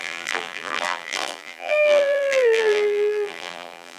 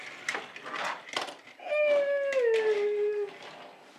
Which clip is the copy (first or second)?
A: first